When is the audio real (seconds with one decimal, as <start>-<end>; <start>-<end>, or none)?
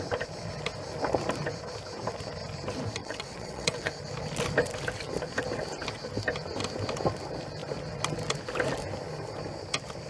0.0-3.0; 3.9-10.1